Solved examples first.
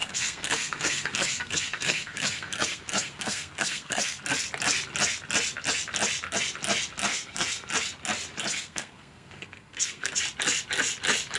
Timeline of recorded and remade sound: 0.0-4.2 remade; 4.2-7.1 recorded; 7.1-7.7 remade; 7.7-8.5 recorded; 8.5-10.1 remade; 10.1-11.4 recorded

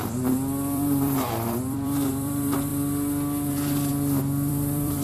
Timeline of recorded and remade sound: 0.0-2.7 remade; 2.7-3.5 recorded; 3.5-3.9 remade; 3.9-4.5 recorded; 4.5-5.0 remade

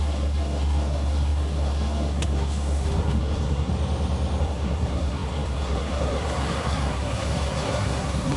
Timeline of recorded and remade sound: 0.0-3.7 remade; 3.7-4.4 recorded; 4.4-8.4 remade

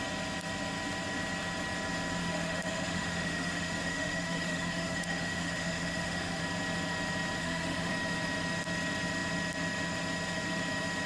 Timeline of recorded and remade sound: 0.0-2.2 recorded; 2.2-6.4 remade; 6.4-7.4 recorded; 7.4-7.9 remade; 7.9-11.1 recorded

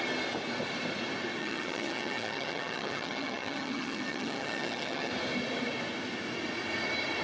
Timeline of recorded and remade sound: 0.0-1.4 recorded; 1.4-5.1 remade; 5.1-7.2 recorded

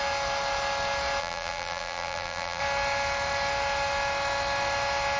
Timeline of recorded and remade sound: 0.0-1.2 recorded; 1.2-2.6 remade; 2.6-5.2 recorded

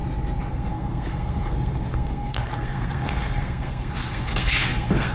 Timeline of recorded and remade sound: 0.0-0.5 recorded; 0.5-5.1 remade